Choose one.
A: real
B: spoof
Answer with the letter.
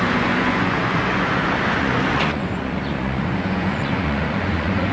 B